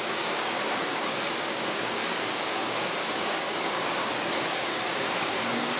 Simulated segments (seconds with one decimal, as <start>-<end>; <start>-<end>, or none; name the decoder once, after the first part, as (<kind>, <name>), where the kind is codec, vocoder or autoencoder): 0.0-5.8 (codec, DAC)